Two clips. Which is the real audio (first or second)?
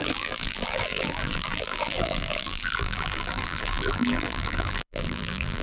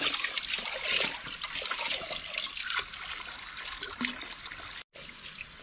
second